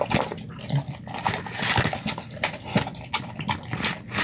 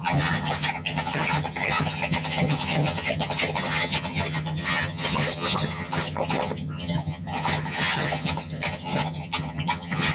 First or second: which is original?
first